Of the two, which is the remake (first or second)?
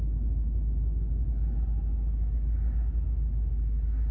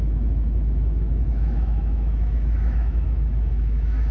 second